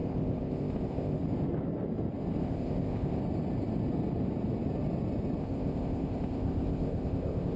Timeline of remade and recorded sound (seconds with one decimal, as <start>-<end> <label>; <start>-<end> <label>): 0.0-1.2 remade; 1.2-2.4 recorded; 2.4-3.2 remade; 3.2-5.4 recorded; 5.4-7.6 remade